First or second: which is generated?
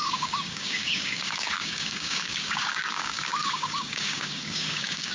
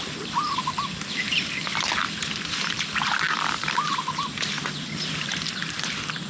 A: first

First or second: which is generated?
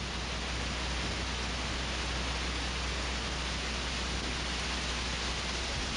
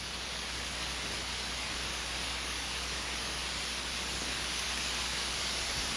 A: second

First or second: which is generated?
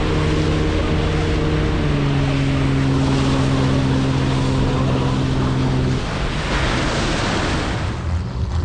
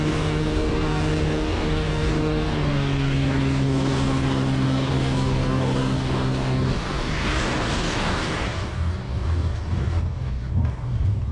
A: second